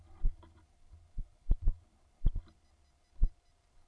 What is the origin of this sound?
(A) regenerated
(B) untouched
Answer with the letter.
B